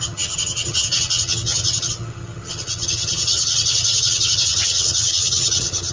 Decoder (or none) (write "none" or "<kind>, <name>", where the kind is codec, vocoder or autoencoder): vocoder, HiFi-GAN